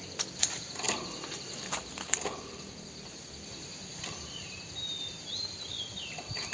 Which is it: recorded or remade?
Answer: recorded